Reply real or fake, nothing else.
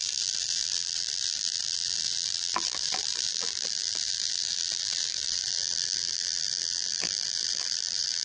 fake